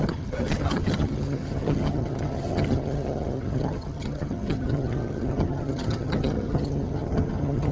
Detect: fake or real fake